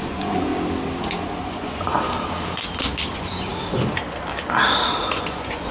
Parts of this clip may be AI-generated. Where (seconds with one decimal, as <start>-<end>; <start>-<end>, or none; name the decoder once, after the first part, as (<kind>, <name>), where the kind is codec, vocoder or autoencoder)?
0.0-0.5 (vocoder, Vocos); 1.4-1.9; 3.1-3.5; 5.0-5.7